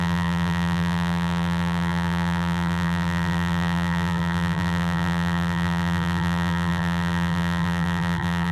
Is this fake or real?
fake